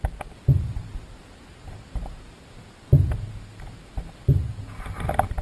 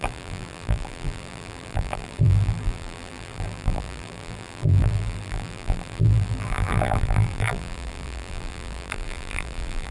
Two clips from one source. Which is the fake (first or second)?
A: second